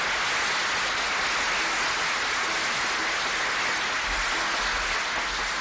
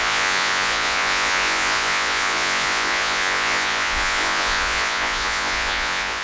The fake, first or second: second